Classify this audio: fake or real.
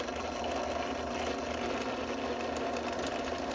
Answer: real